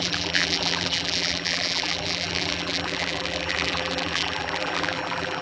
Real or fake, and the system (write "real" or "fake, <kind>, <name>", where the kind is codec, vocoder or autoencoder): fake, vocoder, BigVGAN v2